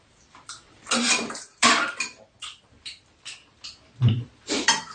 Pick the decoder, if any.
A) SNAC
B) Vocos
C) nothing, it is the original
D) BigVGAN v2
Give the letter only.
D